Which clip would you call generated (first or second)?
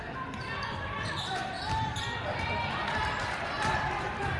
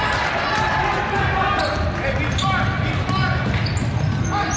first